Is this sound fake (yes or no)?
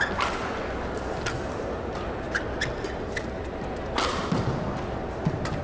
no